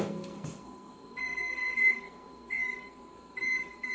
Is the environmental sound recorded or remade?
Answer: remade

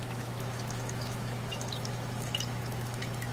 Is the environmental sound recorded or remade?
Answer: remade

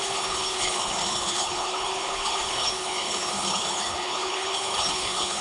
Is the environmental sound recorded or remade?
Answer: remade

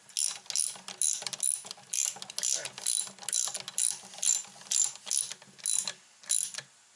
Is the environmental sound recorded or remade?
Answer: recorded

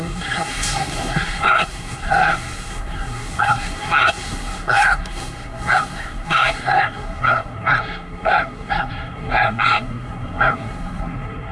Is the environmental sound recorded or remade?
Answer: remade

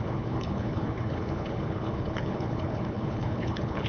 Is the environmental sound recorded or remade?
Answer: remade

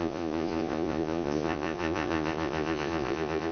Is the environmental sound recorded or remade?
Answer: remade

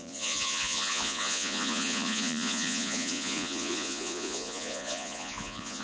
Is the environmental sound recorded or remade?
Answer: remade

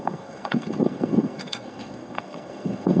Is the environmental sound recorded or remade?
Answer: remade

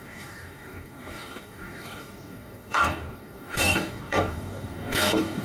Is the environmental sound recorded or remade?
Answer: remade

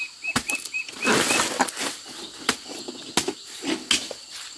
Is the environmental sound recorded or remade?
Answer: recorded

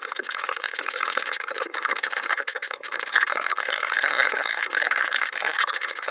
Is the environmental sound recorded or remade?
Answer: remade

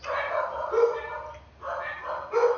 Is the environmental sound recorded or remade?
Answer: recorded